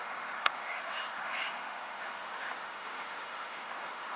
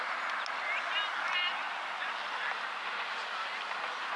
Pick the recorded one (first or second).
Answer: second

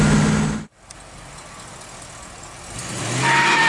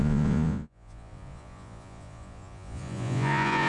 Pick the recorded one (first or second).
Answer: first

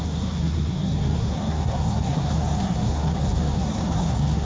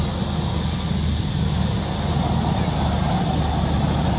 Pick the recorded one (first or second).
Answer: second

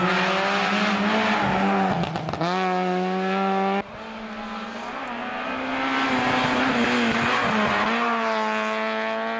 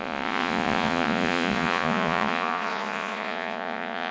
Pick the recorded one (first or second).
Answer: first